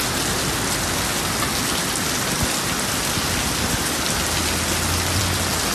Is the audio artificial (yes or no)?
no